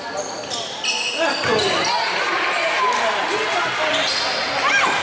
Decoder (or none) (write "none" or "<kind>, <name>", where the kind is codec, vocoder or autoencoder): none